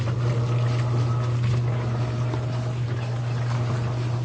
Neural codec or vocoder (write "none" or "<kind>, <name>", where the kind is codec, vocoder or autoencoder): none